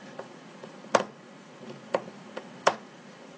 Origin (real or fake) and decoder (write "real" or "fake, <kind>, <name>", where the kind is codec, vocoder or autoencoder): fake, vocoder, Vocos